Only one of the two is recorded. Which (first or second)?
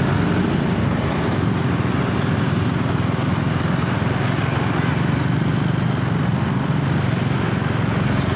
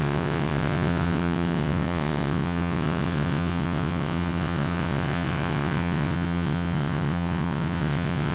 first